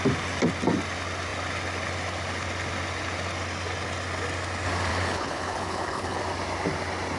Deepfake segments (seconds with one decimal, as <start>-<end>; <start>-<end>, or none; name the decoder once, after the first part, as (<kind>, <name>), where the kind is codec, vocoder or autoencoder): 4.9-6.2 (codec, HILCodec)